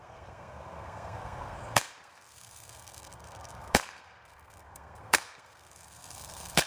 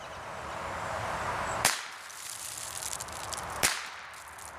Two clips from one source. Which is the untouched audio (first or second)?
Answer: second